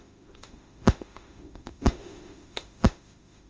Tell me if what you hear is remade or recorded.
remade